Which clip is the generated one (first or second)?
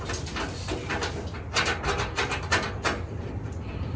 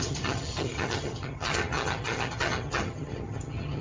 second